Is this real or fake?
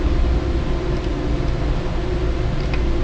real